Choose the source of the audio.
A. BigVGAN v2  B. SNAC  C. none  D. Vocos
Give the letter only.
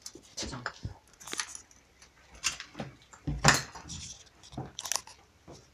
C